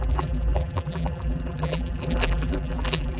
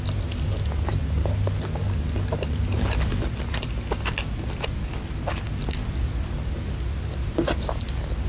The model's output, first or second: first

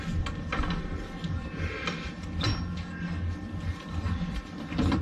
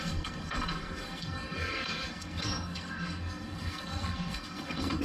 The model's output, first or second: second